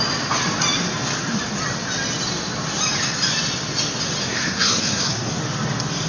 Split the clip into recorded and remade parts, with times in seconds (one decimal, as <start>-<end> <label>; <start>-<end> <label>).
0.0-4.2 recorded; 4.2-5.4 remade; 5.4-6.1 recorded